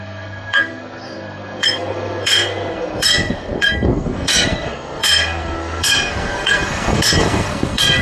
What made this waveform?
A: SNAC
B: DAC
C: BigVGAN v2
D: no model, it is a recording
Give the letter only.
A